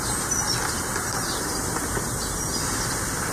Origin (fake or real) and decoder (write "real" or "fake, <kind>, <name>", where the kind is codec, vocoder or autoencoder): real